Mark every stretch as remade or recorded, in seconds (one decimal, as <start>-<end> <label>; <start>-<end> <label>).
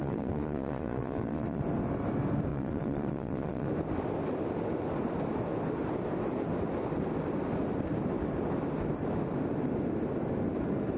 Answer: 0.0-1.6 remade; 1.6-2.5 recorded; 2.5-3.7 remade; 3.7-11.0 recorded